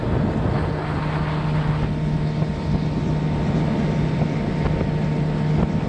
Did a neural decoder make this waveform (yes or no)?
no